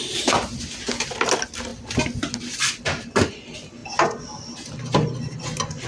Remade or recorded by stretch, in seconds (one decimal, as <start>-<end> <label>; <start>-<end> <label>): 0.0-5.9 recorded